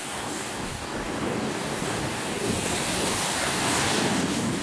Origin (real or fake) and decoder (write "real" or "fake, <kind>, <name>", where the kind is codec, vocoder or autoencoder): fake, codec, DAC